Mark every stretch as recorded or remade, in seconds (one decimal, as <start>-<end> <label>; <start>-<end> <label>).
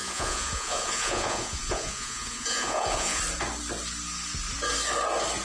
0.0-3.2 remade; 3.2-5.4 recorded